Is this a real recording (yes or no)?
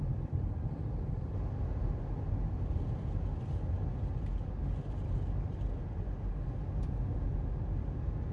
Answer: yes